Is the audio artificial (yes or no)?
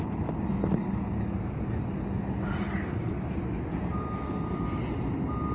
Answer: no